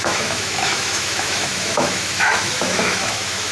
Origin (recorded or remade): remade